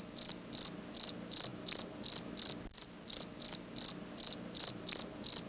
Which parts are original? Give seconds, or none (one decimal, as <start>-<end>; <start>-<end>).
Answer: 0.0-5.5